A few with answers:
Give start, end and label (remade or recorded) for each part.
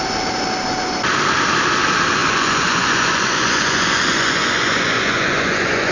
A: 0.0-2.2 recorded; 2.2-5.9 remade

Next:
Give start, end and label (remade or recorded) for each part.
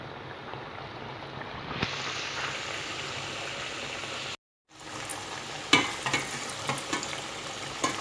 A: 0.0-8.0 recorded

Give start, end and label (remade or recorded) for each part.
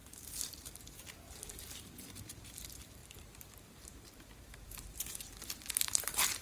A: 0.0-3.0 remade; 3.0-3.7 recorded; 3.7-6.4 remade